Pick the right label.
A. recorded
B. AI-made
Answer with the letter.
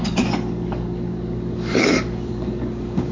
B